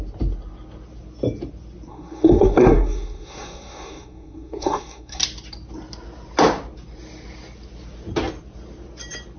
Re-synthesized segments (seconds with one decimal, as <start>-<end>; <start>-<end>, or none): 1.9-5.2